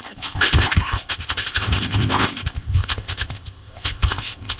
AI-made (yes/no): yes